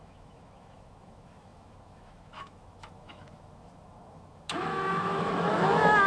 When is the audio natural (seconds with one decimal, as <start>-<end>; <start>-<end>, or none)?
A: none